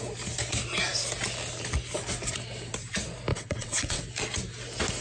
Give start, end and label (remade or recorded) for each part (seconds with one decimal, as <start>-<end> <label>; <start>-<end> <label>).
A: 0.0-3.3 recorded; 3.3-4.0 remade; 4.0-5.0 recorded